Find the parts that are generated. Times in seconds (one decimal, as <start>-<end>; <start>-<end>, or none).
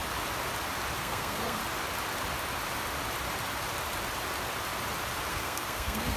1.0-1.6; 5.3-6.2